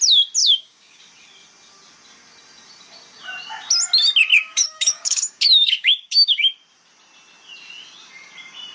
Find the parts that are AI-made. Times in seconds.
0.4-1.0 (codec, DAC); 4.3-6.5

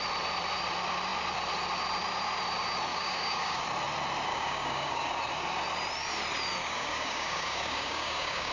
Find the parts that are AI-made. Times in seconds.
2.9-3.6 (codec, DAC); 4.3-5.1; 6.6-8.5

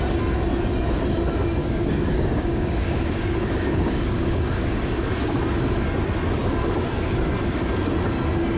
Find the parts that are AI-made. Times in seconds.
1.6-4.9 (codec, DAC)

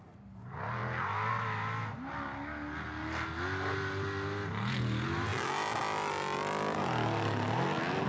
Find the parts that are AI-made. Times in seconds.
none

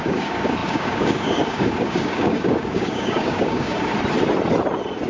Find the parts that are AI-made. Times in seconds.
0.0-3.9 (codec, DAC)

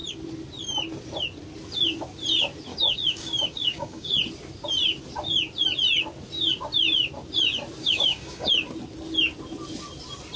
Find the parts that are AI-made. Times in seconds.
2.7-4.1 (codec, DAC); 7.8-8.5

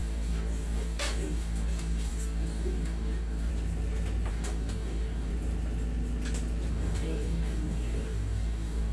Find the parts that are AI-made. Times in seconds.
0.0-3.5 (codec, DAC); 4.3-5.3; 6.7-8.9